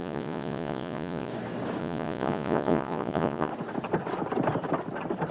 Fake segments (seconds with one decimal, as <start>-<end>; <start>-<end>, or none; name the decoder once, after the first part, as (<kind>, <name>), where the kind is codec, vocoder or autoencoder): 0.0-1.3 (vocoder, Vocos); 1.8-3.5